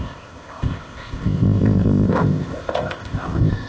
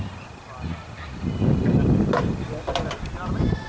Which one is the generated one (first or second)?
first